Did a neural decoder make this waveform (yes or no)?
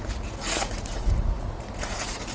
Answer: yes